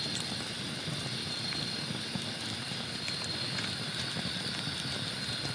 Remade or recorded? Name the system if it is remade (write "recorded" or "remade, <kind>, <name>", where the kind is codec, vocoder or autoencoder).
recorded